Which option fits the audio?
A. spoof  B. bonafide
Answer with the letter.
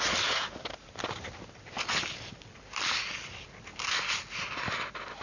B